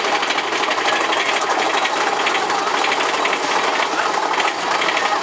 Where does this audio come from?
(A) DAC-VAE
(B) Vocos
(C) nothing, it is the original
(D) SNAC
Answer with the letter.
C